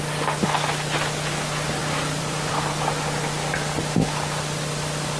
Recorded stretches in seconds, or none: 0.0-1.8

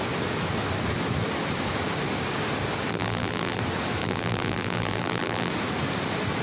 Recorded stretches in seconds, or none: 0.0-2.9; 3.6-4.0; 5.5-6.4

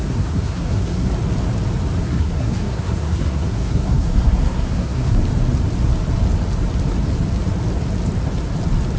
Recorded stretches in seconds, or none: 1.1-2.0; 5.2-9.0